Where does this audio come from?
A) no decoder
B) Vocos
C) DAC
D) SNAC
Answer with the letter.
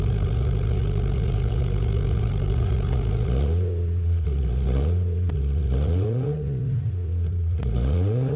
B